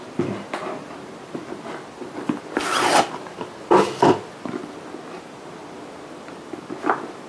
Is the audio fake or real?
real